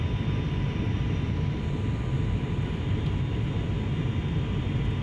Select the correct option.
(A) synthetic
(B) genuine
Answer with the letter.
B